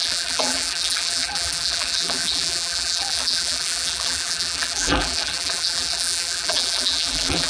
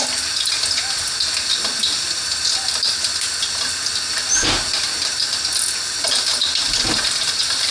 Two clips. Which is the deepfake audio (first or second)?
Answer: first